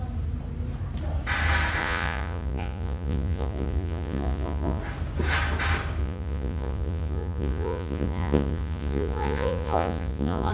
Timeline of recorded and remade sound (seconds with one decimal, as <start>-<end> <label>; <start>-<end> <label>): 0.0-1.8 recorded; 1.8-4.8 remade; 4.8-6.0 recorded; 6.0-10.5 remade